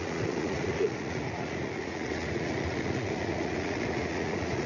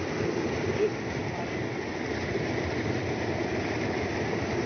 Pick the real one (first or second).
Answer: second